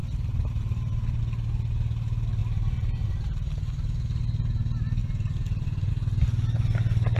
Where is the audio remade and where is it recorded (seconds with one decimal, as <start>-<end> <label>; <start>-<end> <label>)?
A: 0.0-1.2 remade; 1.2-2.4 recorded; 2.4-4.2 remade; 4.2-5.0 recorded; 5.0-5.9 remade; 5.9-7.2 recorded